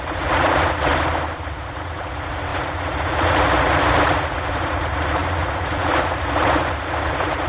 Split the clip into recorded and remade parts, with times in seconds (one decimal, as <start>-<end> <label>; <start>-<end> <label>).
0.0-0.9 remade; 0.9-1.4 recorded; 1.4-7.5 remade